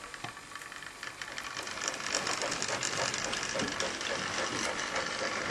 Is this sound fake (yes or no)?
no